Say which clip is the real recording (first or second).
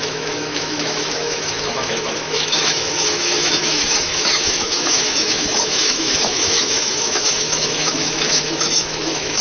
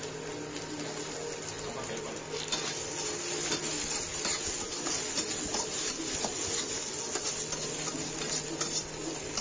second